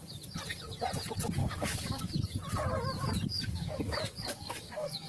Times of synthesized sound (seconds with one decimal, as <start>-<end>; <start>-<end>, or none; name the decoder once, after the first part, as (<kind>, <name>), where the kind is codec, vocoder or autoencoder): 1.4-2.1 (codec, DAC); 3.3-5.1